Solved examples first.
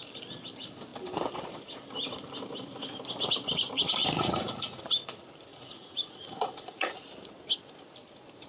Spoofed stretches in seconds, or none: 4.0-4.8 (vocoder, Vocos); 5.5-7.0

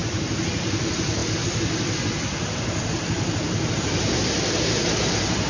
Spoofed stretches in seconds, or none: none

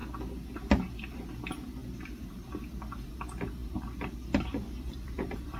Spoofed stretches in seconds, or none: 3.6-5.6 (vocoder, BigVGAN v2)